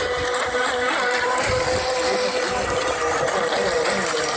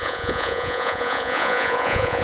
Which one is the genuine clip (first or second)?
first